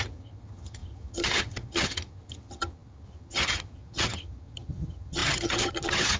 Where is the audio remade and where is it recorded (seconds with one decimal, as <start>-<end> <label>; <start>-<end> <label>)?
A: 0.0-6.2 remade